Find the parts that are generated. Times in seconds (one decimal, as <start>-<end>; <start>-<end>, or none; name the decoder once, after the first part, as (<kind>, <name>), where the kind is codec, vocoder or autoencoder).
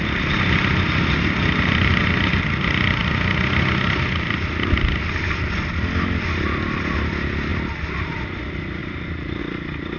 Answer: 7.5-8.2 (vocoder, BigVGAN v2); 8.8-9.4